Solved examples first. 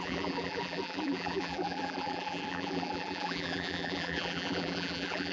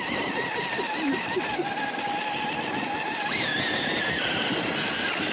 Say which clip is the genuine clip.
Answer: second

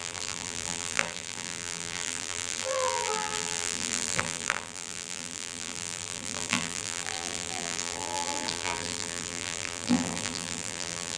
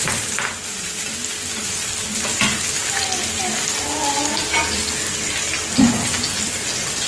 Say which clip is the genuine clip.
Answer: second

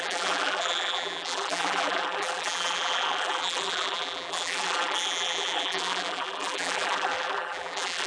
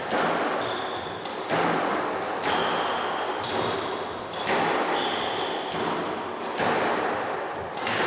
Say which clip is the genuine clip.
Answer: second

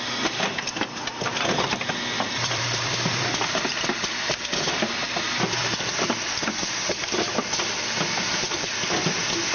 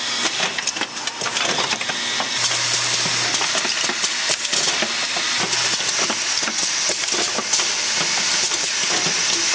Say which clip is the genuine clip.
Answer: second